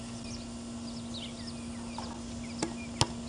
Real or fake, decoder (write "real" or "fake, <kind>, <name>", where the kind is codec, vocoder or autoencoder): real